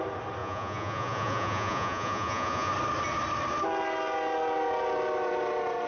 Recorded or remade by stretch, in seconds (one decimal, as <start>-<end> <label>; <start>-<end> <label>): 0.0-0.4 recorded; 0.4-2.7 remade; 2.7-5.9 recorded